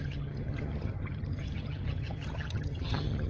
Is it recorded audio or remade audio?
remade